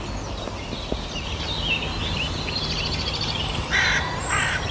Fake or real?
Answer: real